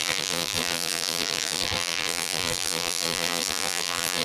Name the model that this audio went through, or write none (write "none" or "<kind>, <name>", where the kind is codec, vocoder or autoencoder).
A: vocoder, BigVGAN v2